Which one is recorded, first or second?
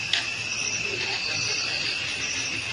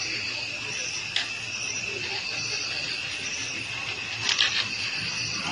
first